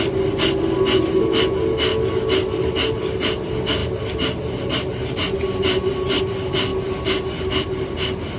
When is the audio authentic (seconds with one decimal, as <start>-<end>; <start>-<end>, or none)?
0.0-8.4